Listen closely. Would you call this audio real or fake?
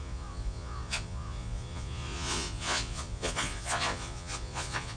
fake